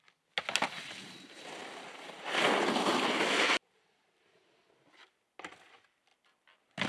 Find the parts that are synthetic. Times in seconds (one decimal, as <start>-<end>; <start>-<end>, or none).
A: none